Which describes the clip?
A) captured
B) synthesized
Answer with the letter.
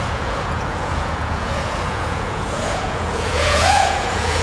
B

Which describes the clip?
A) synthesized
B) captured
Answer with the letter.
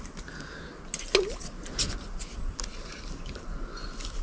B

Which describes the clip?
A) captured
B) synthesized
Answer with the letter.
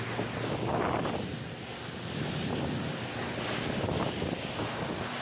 A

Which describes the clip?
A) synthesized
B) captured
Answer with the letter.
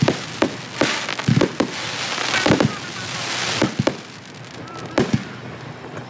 B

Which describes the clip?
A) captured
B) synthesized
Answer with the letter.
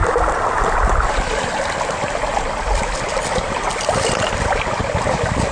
A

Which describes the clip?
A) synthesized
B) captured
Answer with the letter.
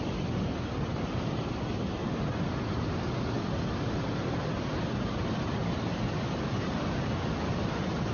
B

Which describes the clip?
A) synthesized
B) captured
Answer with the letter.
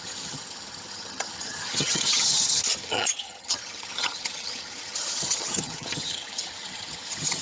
A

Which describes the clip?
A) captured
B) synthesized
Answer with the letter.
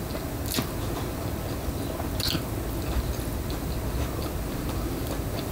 A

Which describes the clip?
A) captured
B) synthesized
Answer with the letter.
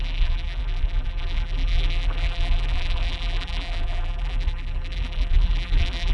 B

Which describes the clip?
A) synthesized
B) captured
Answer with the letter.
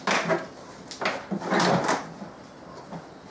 B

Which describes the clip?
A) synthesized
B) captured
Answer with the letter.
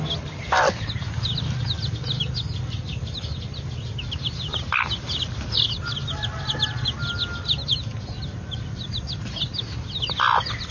B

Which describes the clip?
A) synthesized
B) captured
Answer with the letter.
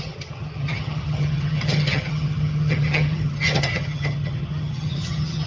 A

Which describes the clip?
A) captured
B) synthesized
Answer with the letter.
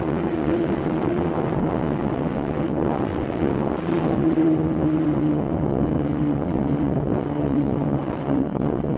B